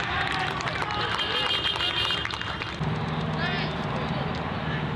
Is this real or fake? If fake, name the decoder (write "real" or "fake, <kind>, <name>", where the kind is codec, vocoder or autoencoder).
real